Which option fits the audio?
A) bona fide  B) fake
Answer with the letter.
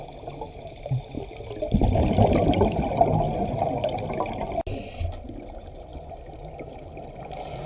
A